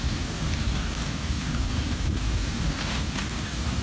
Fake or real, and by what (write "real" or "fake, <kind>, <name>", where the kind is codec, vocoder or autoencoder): fake, codec, DAC